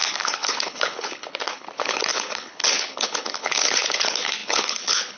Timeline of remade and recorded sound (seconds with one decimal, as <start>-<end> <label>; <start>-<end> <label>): 0.0-5.2 remade